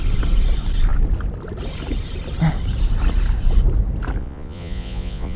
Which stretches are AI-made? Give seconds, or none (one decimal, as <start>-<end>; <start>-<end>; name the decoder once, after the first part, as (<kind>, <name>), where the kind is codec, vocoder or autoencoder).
4.2-5.4 (vocoder, Vocos)